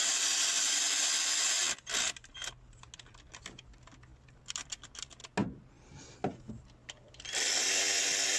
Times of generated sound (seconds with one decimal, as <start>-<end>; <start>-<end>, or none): 0.0-1.6; 3.2-5.2; 6.5-8.4